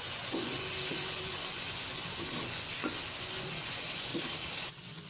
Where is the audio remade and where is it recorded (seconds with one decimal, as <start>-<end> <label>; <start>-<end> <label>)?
0.0-4.1 remade; 4.1-4.6 recorded; 4.6-5.1 remade